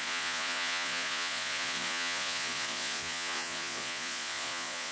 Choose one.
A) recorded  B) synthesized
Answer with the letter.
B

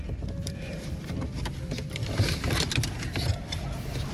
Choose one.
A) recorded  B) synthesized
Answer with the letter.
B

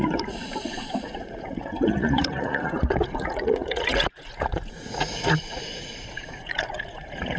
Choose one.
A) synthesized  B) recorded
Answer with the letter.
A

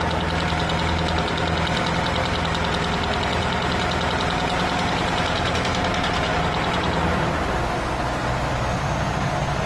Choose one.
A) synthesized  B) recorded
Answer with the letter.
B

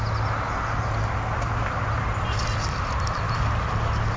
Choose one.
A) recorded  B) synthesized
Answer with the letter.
A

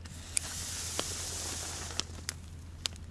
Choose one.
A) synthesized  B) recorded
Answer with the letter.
B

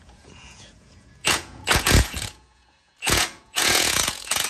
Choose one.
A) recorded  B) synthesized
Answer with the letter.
B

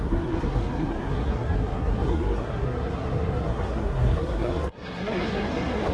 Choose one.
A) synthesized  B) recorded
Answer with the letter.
A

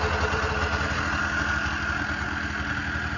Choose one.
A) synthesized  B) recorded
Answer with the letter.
B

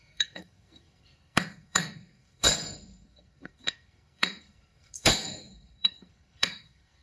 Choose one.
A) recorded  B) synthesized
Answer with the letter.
B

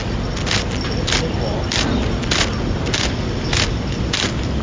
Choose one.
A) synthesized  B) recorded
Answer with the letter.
B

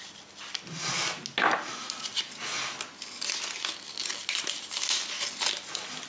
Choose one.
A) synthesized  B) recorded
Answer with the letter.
B